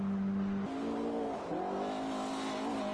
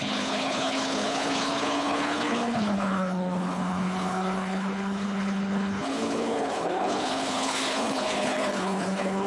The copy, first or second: second